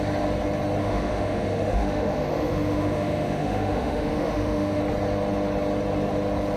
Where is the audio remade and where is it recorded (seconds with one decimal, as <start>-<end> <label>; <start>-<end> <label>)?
0.0-0.8 recorded; 0.8-4.8 remade; 4.8-6.6 recorded